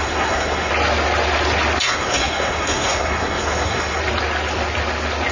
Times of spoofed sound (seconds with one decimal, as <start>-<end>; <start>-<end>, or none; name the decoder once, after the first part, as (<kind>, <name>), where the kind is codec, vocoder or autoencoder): 0.0-0.7 (codec, SNAC); 1.8-4.0

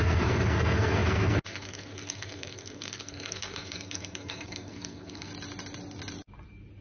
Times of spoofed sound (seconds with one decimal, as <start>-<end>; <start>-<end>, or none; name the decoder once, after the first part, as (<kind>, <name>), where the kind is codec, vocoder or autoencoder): 0.0-5.3 (codec, SNAC)

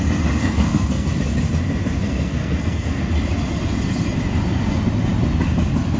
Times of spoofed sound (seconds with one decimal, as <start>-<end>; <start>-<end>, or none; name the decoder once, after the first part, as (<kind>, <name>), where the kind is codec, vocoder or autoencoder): 0.4-1.1 (codec, SNAC); 2.0-3.1

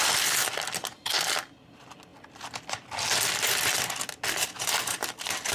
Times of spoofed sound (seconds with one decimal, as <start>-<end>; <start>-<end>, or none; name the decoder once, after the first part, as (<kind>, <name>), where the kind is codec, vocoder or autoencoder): none

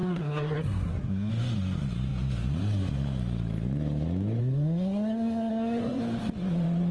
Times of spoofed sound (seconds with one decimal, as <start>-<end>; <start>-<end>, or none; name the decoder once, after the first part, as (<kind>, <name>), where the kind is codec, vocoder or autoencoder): 0.0-1.3 (codec, SNAC); 4.4-6.0

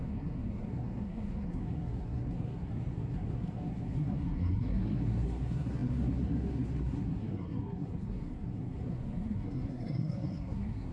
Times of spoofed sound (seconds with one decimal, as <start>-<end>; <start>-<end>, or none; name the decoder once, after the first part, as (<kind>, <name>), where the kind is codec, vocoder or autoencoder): 0.0-10.9 (codec, SNAC)